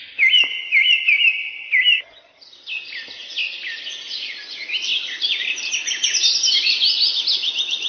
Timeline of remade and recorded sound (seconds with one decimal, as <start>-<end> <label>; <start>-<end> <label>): 0.0-7.9 recorded